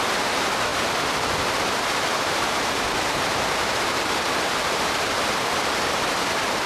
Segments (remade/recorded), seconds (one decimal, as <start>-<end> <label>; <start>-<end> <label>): 0.0-2.1 recorded; 2.1-6.1 remade; 6.1-6.7 recorded